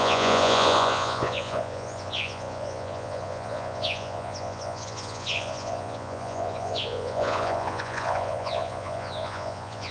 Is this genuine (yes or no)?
no